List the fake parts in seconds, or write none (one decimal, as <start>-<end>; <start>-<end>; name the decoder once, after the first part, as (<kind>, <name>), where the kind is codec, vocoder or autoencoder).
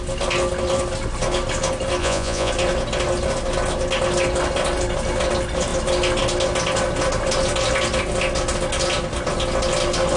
2.0-2.5 (vocoder, Vocos)